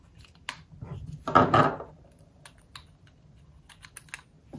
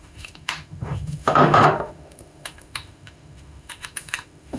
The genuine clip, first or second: first